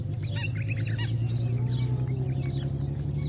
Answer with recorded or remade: recorded